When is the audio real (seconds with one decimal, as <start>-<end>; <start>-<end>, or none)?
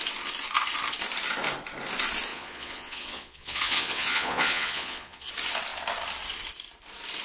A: 0.0-2.3; 5.3-7.2